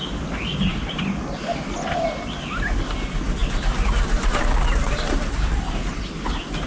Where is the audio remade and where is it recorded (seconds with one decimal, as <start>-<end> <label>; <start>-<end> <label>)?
0.0-6.7 recorded